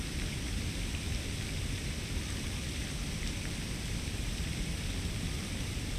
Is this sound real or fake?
fake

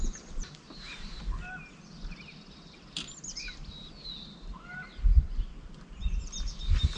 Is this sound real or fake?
fake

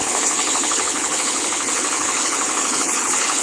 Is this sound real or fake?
fake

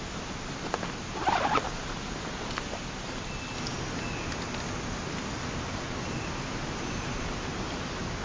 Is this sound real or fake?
real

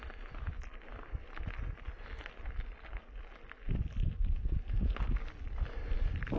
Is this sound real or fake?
real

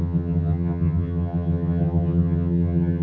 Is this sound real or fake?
fake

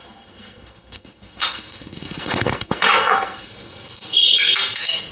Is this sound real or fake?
fake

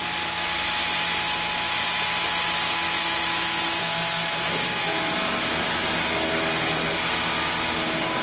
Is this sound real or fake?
real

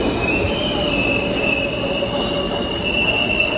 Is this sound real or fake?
real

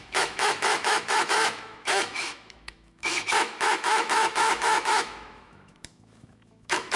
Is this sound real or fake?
fake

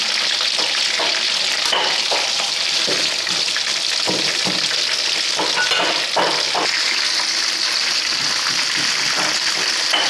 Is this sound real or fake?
real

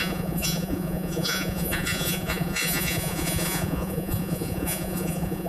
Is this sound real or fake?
fake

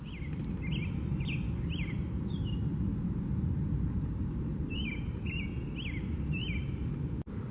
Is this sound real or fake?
real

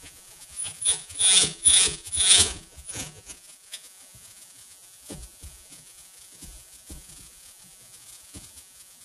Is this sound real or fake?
fake